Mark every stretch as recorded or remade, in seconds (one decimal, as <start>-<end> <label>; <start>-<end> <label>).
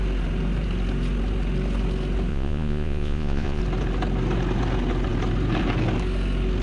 0.0-2.3 recorded; 2.3-3.6 remade; 3.6-6.6 recorded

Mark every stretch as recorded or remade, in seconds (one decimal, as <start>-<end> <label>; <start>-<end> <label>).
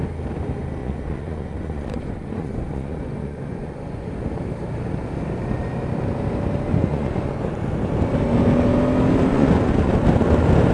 0.0-0.8 recorded; 0.8-4.1 remade; 4.1-6.7 recorded; 6.7-7.4 remade; 7.4-9.3 recorded; 9.3-9.9 remade; 9.9-10.7 recorded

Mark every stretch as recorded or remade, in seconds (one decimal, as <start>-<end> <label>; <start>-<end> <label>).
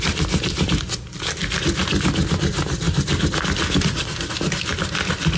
0.0-5.4 recorded